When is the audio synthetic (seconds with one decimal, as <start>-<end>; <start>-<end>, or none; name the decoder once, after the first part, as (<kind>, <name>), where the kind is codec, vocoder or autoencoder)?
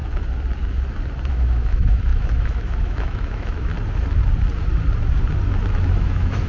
1.3-3.7 (autoencoder, DAC-VAE); 5.7-6.5